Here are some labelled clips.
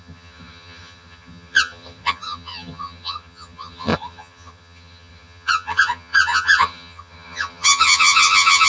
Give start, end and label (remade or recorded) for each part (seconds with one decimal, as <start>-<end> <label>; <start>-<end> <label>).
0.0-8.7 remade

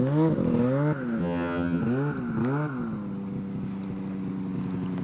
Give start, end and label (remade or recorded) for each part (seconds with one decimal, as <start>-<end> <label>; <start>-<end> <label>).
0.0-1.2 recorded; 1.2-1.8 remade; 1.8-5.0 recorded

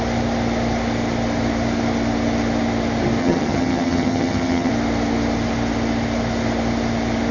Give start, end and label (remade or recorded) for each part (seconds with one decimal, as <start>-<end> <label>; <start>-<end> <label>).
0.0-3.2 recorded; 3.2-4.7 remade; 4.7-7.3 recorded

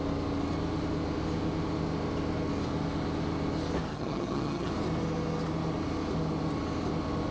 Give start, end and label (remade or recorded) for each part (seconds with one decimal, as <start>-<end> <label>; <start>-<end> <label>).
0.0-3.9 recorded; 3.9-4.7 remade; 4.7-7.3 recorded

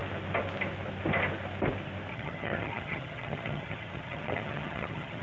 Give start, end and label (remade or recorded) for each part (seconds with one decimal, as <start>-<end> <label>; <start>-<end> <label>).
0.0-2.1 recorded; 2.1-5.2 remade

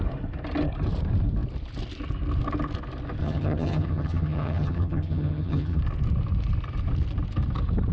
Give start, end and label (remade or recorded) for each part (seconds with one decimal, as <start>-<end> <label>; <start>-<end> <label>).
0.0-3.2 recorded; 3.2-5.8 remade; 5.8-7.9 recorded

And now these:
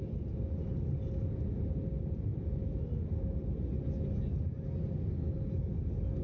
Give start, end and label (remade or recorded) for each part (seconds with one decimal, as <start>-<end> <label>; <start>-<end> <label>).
0.0-6.2 recorded

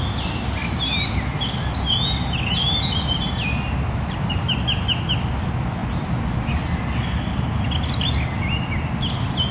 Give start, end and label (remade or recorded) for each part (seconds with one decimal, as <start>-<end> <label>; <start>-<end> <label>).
0.0-9.5 recorded